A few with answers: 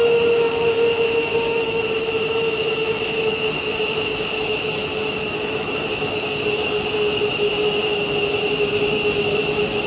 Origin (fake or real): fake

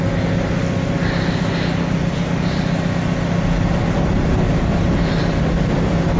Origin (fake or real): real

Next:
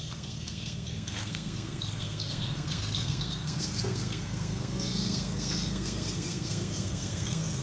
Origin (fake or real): fake